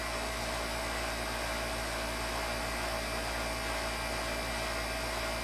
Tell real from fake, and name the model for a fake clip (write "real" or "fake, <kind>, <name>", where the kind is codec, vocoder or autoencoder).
real